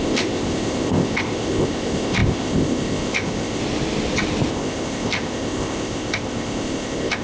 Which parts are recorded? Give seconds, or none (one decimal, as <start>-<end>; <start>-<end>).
3.6-4.5